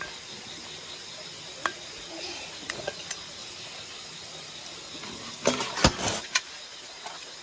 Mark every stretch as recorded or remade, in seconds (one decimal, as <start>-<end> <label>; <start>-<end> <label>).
0.0-1.9 recorded; 1.9-3.4 remade; 3.4-6.2 recorded; 6.2-7.4 remade